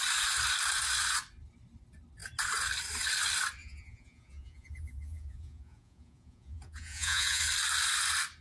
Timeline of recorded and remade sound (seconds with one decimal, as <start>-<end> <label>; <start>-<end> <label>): 0.0-3.6 recorded; 3.6-7.4 remade; 7.4-8.4 recorded